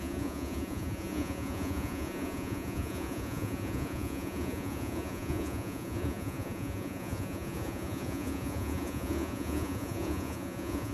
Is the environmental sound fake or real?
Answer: fake